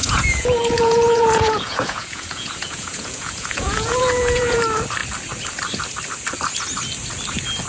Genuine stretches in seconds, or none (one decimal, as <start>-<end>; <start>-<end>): 4.6-7.7